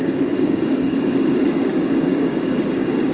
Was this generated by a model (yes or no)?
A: yes